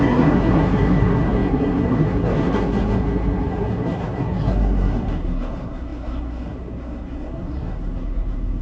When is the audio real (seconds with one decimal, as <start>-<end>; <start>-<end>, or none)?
none